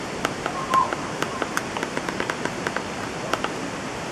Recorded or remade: recorded